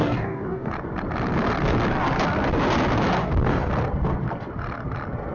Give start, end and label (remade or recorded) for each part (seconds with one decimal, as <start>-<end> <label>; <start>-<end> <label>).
0.0-0.7 remade; 0.7-3.2 recorded; 3.2-3.7 remade; 3.7-5.3 recorded